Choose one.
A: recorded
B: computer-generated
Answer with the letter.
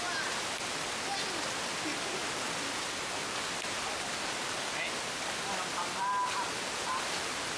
A